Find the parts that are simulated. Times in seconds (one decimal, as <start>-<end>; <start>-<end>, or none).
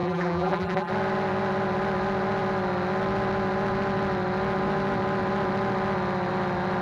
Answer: 0.0-0.9